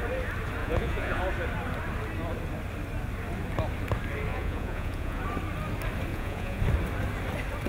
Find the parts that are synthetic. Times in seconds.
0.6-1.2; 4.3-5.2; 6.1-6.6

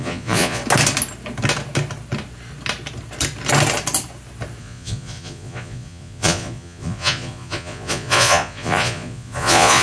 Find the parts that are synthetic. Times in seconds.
0.0-0.6; 4.6-9.8

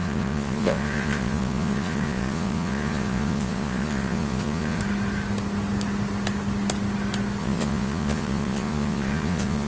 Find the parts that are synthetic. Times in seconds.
0.0-4.8; 7.4-9.7